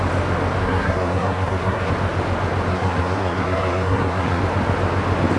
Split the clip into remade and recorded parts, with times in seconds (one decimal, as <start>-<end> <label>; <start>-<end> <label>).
0.0-0.6 recorded; 0.6-1.9 remade; 1.9-2.7 recorded; 2.7-4.4 remade; 4.4-5.4 recorded